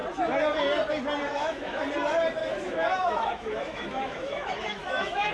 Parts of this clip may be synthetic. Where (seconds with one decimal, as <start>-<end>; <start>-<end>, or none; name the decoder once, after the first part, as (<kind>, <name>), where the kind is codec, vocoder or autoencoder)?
1.3-1.8 (autoencoder, DAC-VAE); 2.4-5.3